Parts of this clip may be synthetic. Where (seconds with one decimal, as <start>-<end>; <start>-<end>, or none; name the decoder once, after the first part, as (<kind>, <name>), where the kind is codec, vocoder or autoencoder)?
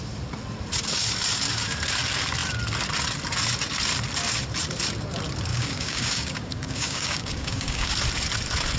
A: 5.5-7.9 (codec, DAC)